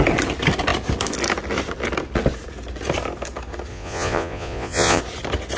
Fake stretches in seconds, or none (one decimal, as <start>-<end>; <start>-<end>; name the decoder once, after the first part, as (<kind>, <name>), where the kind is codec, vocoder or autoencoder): 3.7-5.0 (vocoder, Vocos)